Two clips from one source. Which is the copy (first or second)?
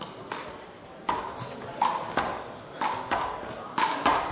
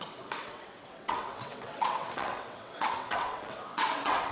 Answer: second